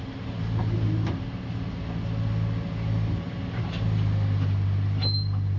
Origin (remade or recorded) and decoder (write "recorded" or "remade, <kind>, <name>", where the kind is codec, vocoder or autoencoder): recorded